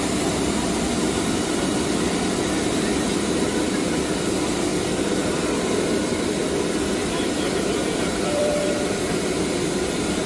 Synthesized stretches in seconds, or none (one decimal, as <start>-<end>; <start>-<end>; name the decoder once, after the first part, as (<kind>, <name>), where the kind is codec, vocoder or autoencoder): 0.0-4.7 (vocoder, BigVGAN v2); 5.6-10.3